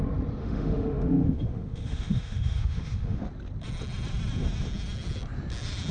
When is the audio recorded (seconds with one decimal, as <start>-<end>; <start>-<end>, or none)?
0.0-0.4; 3.2-5.9